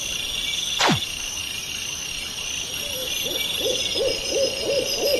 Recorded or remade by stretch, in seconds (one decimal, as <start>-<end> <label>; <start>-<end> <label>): 0.0-1.4 recorded; 1.4-2.1 remade; 2.1-3.0 recorded; 3.0-4.6 remade; 4.6-5.2 recorded